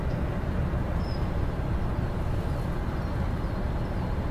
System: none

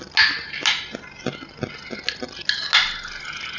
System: none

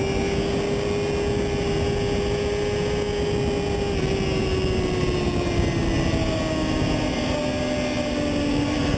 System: none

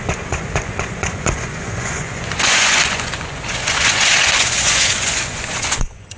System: vocoder, Vocos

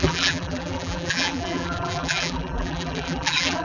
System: vocoder, BigVGAN v2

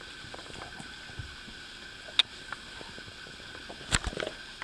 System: none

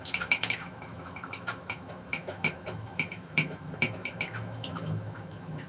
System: autoencoder, DAC-VAE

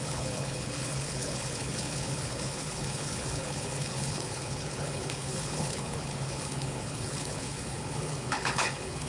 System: codec, HILCodec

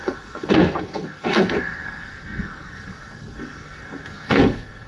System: codec, SNAC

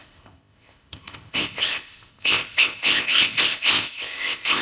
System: codec, ZipCodec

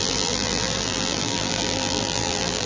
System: vocoder, BigVGAN v2